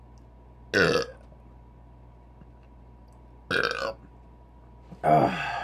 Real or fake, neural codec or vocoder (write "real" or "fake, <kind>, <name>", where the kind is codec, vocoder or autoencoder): real